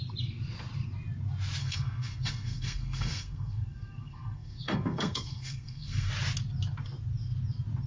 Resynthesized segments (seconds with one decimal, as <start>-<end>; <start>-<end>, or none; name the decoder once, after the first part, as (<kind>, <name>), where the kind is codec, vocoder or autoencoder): 1.6-6.1 (codec, SNAC)